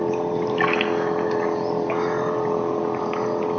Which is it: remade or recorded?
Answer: recorded